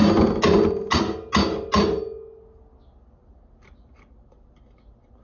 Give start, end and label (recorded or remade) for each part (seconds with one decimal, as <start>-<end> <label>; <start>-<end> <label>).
0.0-5.2 recorded

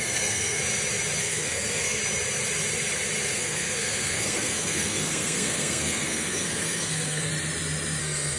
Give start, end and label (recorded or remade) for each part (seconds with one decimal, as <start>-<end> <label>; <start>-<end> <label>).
0.0-0.6 remade; 0.6-1.2 recorded; 1.2-2.0 remade; 2.0-3.3 recorded; 3.3-7.3 remade; 7.3-8.0 recorded; 8.0-8.4 remade

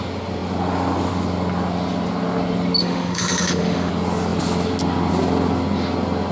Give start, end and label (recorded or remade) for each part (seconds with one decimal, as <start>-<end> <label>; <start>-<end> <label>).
0.0-2.8 recorded; 2.8-3.9 remade; 3.9-6.3 recorded

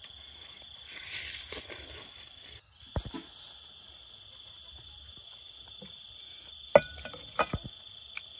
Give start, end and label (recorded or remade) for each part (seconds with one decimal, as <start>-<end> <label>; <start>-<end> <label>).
0.0-8.4 recorded

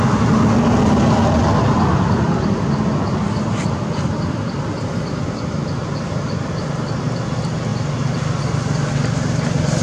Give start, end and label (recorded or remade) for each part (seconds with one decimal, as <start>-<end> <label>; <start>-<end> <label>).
0.0-9.8 recorded

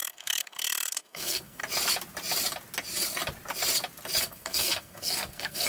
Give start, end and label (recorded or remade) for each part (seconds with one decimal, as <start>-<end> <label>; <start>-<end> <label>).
0.0-1.6 remade; 1.6-4.2 recorded; 4.2-5.7 remade

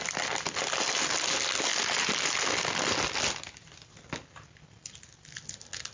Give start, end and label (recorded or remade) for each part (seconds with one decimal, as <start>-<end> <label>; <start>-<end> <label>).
0.0-5.9 recorded